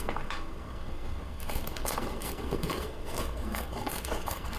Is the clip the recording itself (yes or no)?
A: no